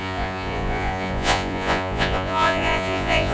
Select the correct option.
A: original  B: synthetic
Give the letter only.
B